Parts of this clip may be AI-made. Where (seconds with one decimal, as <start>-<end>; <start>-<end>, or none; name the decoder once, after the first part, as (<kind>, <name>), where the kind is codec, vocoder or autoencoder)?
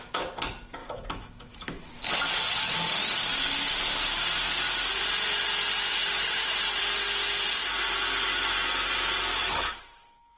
0.8-1.9 (autoencoder, DAC-VAE); 5.9-6.8; 9.3-10.4